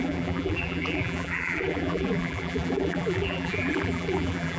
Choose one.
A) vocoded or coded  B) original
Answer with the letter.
A